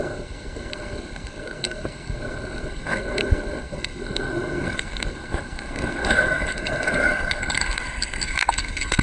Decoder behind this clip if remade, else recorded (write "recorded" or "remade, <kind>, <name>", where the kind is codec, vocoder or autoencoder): remade, codec, SNAC